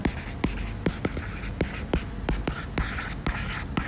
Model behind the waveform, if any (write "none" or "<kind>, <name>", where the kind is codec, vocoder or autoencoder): none